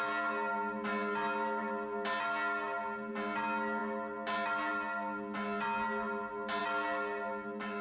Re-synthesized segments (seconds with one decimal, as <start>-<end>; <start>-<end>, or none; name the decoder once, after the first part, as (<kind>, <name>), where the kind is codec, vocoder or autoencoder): none